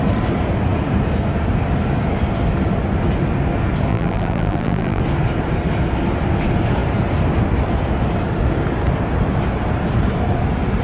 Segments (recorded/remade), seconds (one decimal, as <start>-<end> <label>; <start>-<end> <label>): 0.0-3.9 recorded; 3.9-5.0 remade; 5.0-10.8 recorded